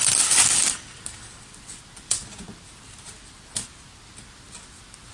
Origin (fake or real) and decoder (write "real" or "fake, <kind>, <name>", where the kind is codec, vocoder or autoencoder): real